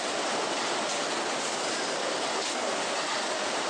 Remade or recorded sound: recorded